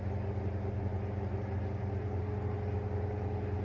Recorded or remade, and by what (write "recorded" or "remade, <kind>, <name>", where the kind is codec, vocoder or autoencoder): recorded